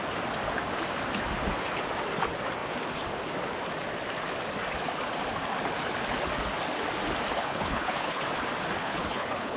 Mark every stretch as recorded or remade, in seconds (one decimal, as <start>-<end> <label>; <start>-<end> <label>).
0.0-7.4 recorded; 7.4-8.2 remade; 8.2-8.8 recorded; 8.8-9.6 remade